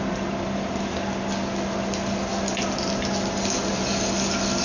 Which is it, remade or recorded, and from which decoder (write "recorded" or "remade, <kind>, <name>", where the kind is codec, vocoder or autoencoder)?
recorded